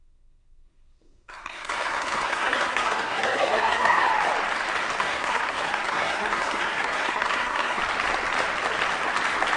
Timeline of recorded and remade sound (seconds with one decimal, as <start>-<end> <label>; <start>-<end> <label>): 0.0-4.1 remade; 4.1-5.0 recorded; 5.0-7.8 remade; 7.8-9.6 recorded